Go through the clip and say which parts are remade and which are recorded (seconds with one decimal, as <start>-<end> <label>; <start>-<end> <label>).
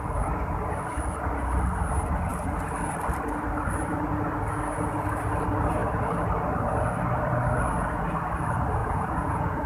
0.0-8.8 recorded; 8.8-9.7 remade